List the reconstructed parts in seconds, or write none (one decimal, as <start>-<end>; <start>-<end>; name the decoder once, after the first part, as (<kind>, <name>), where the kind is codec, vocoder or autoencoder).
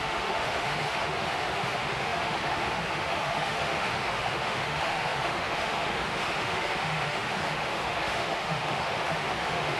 0.0-9.8 (autoencoder, DAC-VAE)